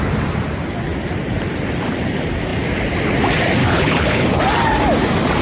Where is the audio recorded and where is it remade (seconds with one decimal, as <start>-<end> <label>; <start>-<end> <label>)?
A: 0.0-3.6 recorded; 3.6-4.4 remade; 4.4-5.4 recorded